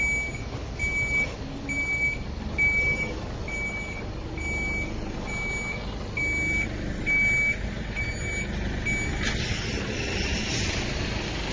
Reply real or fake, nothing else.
real